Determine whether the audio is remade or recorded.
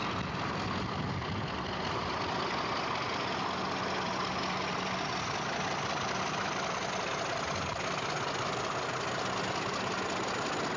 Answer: recorded